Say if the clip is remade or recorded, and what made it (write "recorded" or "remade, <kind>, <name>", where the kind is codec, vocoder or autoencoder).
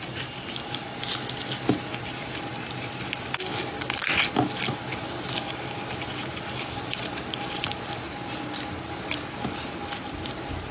recorded